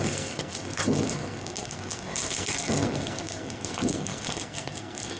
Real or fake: fake